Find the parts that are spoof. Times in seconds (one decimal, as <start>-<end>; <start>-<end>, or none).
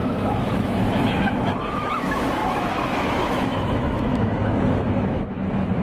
0.0-5.8